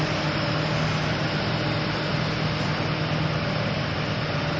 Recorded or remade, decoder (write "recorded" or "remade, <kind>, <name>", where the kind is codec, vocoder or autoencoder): recorded